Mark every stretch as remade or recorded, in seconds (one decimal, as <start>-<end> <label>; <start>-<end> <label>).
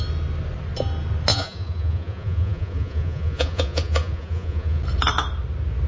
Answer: 0.0-1.3 recorded; 1.3-4.8 remade; 4.8-5.9 recorded